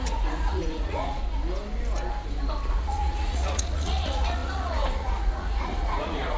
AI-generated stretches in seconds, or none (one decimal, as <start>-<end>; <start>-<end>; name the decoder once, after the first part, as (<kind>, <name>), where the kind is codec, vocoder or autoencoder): 0.0-1.2 (vocoder, Vocos); 2.7-6.4